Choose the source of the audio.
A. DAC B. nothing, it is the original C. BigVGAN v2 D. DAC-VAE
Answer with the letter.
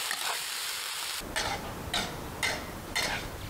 B